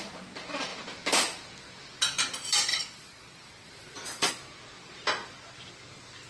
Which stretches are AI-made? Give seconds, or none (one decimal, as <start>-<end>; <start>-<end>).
2.7-4.3